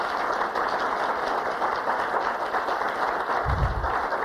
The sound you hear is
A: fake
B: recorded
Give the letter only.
B